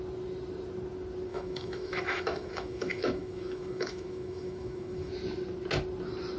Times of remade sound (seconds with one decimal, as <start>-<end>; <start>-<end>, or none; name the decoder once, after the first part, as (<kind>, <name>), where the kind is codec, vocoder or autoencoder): 1.3-5.1 (autoencoder, DAC-VAE)